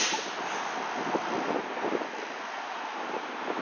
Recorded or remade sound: recorded